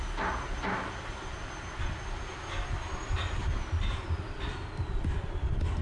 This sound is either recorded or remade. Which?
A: recorded